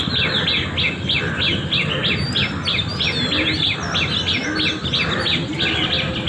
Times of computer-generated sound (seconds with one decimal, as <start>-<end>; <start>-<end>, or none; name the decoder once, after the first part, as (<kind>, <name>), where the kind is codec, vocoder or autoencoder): none